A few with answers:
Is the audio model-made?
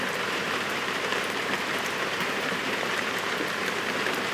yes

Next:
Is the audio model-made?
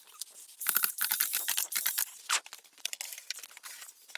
yes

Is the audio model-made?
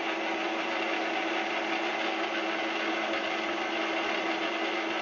no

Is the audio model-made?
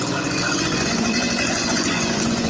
yes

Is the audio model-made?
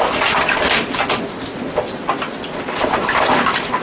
no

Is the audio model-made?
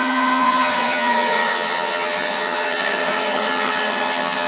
yes